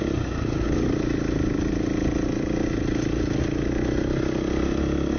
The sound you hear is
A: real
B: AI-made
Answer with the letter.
A